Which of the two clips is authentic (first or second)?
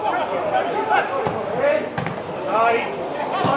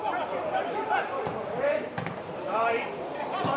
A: first